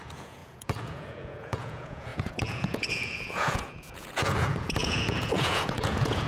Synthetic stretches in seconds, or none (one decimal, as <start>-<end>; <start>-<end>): 0.0-6.3